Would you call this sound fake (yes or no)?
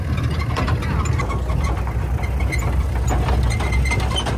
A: no